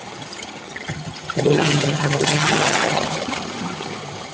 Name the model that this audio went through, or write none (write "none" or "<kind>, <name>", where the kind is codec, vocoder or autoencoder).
vocoder, HiFi-GAN